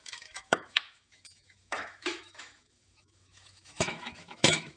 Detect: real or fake fake